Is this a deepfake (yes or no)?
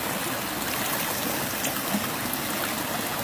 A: no